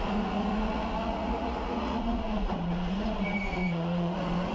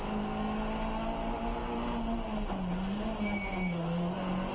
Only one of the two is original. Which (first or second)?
second